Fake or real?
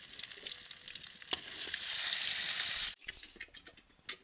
real